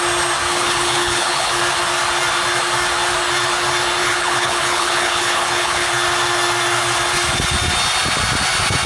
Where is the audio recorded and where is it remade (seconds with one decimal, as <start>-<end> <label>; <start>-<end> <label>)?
0.0-0.5 recorded; 0.5-1.6 remade; 1.6-4.0 recorded; 4.0-5.9 remade; 5.9-8.9 recorded